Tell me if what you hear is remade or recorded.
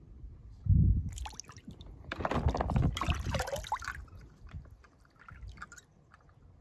recorded